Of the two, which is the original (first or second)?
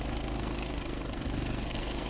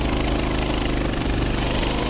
second